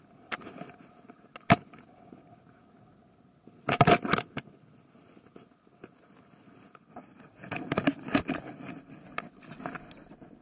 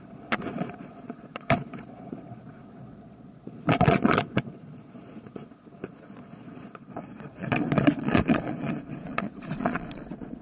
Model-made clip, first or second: second